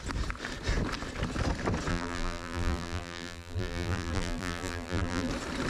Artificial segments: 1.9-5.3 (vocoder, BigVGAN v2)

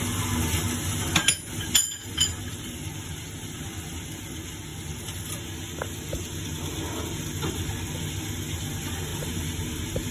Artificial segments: 2.0-3.5 (vocoder, BigVGAN v2); 4.7-5.4

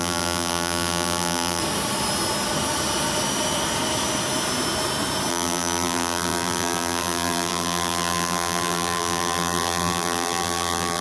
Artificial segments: 0.0-1.6 (vocoder, BigVGAN v2); 5.3-11.0